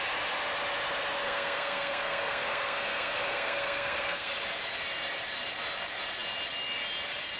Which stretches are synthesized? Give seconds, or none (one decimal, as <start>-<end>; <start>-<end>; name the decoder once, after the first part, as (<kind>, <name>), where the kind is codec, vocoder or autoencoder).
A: 1.2-4.3 (codec, SNAC)